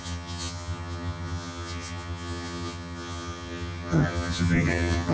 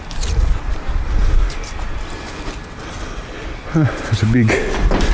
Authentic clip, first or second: second